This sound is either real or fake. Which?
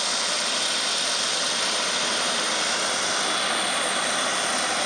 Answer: real